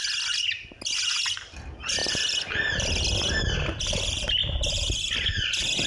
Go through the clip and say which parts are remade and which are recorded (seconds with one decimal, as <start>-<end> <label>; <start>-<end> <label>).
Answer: 0.0-5.9 recorded